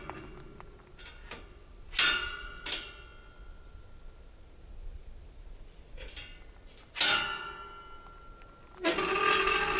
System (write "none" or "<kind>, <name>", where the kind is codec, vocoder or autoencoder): none